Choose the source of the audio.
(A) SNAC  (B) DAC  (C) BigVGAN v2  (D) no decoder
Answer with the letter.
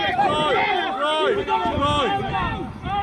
D